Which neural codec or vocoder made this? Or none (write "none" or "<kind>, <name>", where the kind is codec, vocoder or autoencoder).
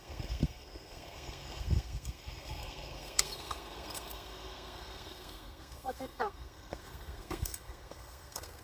codec, SNAC